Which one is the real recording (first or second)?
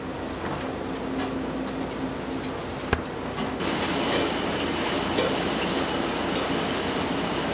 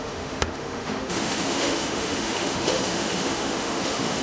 first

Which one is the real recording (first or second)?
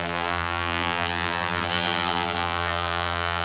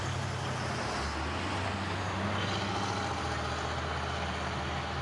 second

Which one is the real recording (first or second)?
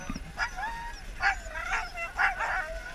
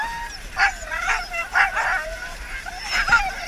first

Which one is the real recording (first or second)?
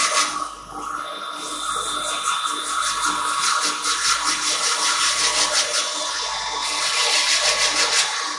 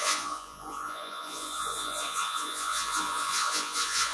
first